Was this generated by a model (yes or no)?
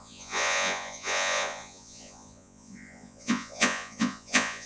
yes